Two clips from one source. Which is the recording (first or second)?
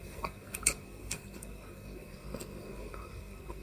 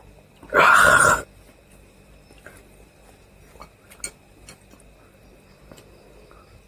second